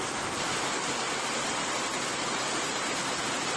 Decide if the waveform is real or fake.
real